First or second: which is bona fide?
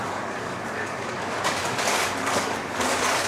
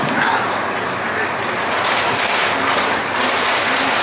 second